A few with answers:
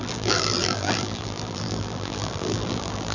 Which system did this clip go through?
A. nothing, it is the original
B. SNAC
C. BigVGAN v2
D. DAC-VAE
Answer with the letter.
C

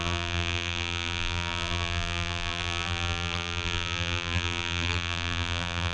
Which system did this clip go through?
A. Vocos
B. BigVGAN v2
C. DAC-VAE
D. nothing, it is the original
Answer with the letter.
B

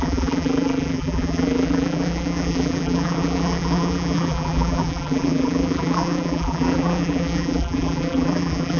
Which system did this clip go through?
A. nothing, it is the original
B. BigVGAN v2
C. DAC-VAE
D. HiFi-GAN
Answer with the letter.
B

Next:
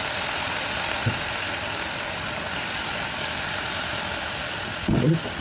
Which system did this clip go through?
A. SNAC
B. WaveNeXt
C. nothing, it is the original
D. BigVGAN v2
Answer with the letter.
C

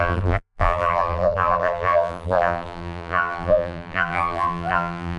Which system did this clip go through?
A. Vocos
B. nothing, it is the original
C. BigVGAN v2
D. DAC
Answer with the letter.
C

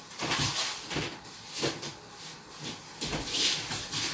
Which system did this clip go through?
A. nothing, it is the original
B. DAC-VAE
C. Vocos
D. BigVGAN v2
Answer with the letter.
A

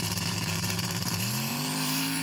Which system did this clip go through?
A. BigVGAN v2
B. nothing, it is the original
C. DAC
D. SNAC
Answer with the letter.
A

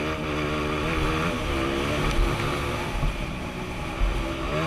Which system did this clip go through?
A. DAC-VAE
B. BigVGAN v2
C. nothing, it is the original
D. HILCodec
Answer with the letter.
C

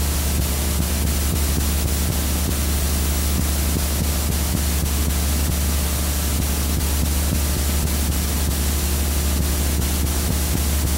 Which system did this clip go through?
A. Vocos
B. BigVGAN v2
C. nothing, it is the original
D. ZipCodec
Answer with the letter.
C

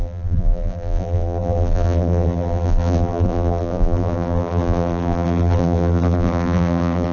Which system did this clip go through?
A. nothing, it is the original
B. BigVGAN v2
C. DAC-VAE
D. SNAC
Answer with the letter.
B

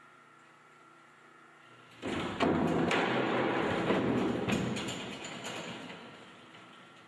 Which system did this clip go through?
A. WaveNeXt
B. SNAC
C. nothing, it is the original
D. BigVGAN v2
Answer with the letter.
D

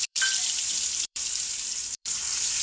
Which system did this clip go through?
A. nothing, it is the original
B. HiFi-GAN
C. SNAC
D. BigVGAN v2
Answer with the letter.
D